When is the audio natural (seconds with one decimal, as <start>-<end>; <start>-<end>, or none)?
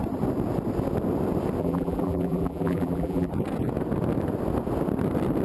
0.0-1.6; 3.3-5.4